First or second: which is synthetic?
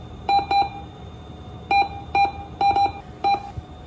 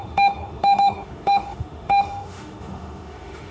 second